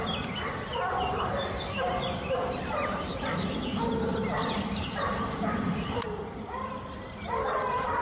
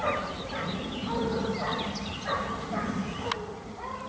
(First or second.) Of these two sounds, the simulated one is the first